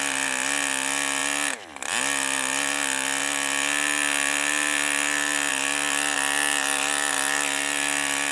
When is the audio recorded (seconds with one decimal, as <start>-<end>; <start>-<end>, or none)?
0.0-8.3